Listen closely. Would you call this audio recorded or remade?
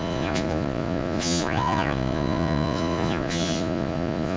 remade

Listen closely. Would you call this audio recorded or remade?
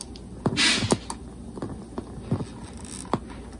recorded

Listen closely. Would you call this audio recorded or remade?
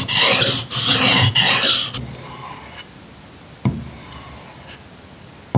recorded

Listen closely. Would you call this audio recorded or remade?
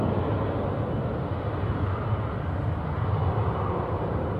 recorded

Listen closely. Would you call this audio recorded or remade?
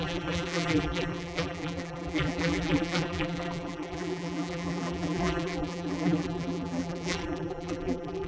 remade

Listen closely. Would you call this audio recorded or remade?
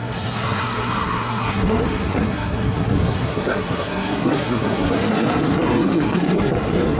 remade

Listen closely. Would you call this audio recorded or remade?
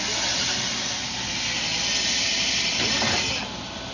recorded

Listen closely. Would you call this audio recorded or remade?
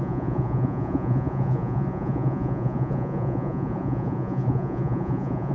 remade